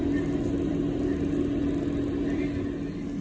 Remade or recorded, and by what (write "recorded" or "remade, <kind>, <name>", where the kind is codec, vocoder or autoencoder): recorded